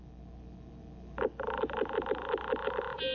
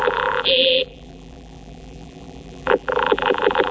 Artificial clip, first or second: second